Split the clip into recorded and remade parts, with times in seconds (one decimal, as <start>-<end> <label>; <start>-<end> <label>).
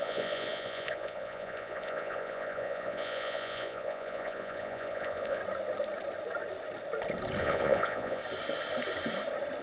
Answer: 0.0-5.4 remade; 5.4-7.4 recorded; 7.4-8.2 remade; 8.2-9.6 recorded